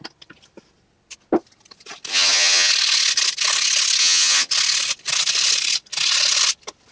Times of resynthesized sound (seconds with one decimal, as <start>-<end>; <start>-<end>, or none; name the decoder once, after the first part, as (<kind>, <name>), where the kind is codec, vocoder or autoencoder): 2.1-2.7 (vocoder, HiFi-GAN); 4.0-4.5